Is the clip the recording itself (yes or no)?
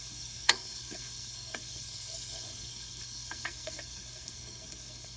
no